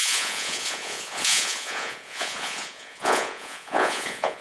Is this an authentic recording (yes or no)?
no